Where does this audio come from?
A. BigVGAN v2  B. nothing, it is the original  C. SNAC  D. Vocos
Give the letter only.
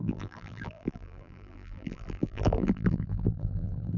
A